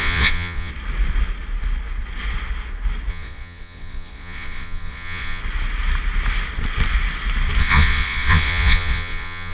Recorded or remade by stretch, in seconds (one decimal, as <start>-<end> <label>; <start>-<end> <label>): 0.0-0.7 remade; 0.7-3.1 recorded; 3.1-5.4 remade; 5.4-7.6 recorded; 7.6-9.5 remade